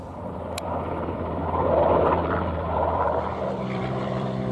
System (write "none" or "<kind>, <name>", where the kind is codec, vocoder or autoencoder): vocoder, BigVGAN v2